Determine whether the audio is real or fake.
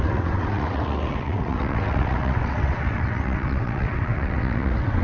fake